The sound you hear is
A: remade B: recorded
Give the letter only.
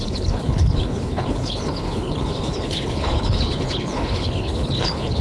A